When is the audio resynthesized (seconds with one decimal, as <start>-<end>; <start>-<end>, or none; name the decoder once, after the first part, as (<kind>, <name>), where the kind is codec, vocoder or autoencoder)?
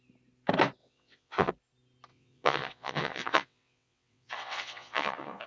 0.8-1.5 (vocoder, WaveNeXt); 2.1-5.5